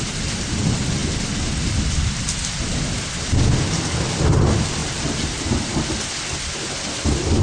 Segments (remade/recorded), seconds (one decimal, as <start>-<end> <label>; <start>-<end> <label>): 0.0-4.8 recorded; 4.8-5.9 remade; 5.9-7.4 recorded